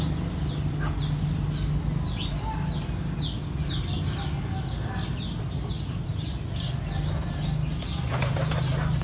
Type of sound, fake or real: real